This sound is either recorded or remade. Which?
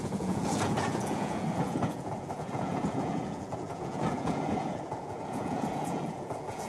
remade